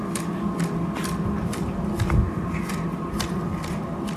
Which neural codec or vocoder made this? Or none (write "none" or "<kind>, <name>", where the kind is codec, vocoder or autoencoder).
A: none